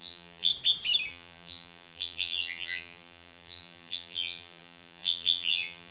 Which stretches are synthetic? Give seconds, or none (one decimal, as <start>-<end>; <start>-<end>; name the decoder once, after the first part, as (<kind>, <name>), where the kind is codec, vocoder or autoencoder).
0.0-0.5 (vocoder, BigVGAN v2); 1.1-5.9